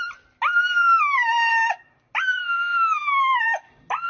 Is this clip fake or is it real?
real